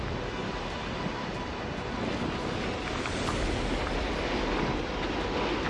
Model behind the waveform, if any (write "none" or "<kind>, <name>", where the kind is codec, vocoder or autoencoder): none